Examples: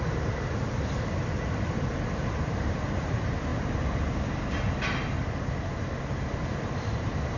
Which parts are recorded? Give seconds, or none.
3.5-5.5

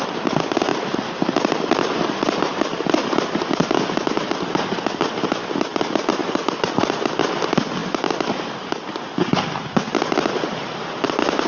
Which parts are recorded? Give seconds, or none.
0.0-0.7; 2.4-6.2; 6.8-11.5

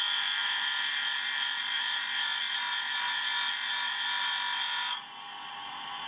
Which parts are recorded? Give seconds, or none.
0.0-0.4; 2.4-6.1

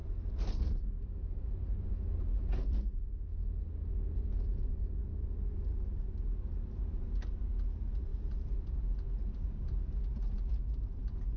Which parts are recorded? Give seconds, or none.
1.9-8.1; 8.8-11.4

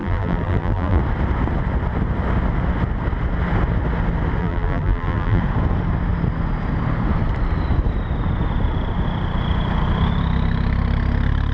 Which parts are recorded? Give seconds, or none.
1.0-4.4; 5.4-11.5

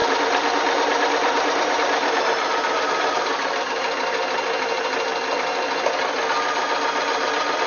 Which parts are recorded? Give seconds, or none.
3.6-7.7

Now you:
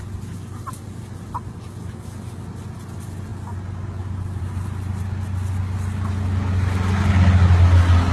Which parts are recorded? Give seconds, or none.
0.0-8.1